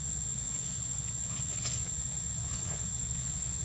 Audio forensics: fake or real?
fake